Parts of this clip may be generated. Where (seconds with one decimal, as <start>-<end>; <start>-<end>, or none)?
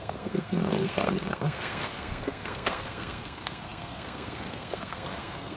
0.0-5.6